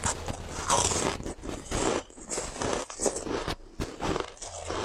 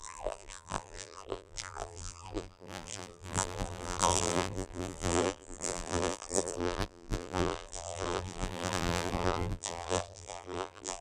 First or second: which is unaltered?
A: first